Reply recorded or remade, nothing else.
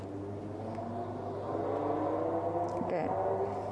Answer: recorded